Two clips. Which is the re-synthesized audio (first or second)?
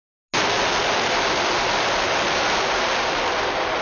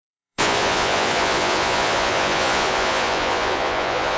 second